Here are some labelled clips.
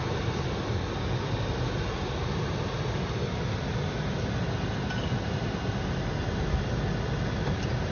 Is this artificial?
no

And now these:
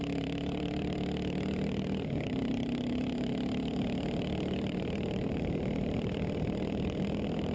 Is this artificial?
yes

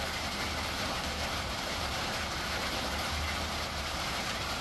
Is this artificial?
yes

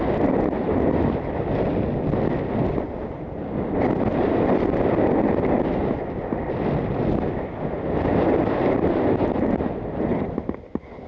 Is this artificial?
no